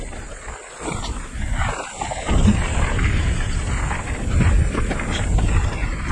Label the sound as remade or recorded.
recorded